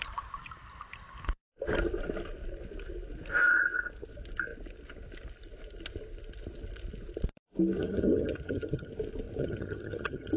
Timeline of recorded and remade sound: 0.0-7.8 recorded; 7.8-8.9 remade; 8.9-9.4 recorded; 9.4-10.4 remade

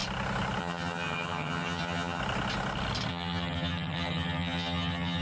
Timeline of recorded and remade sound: 0.0-0.6 recorded; 0.6-2.2 remade; 2.2-3.1 recorded; 3.1-5.2 remade

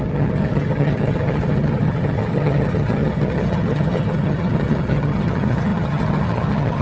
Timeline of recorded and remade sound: 0.0-6.8 remade

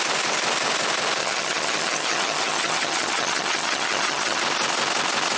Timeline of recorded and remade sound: 0.0-1.2 recorded; 1.2-4.4 remade; 4.4-5.4 recorded

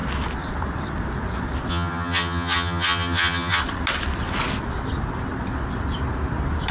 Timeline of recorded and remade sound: 0.0-1.7 recorded; 1.7-3.6 remade; 3.6-6.7 recorded

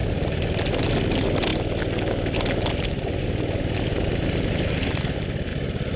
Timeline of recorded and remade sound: 0.0-6.0 recorded

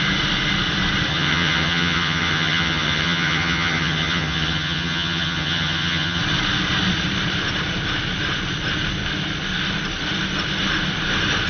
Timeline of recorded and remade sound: 0.0-1.1 recorded; 1.1-6.2 remade; 6.2-11.5 recorded

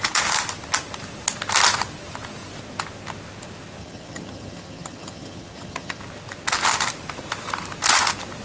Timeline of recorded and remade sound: 0.0-3.8 recorded; 3.8-6.0 remade; 6.0-8.4 recorded